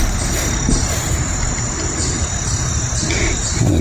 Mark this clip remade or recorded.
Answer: recorded